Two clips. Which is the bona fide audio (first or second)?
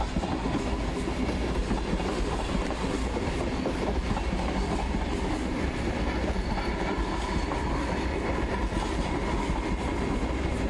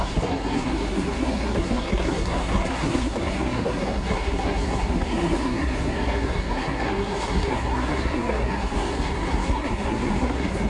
first